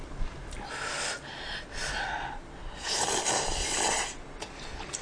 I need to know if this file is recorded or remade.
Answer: recorded